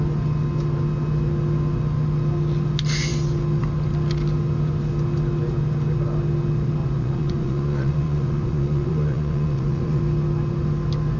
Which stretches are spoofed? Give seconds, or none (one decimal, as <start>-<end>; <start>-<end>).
6.8-10.0